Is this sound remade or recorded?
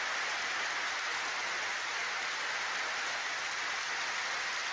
recorded